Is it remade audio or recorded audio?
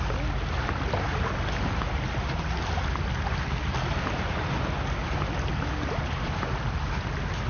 recorded